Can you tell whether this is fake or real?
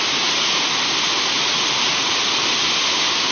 real